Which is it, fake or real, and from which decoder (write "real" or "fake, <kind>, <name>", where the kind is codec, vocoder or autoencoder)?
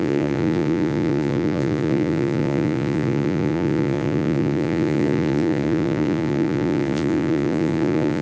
fake, vocoder, Vocos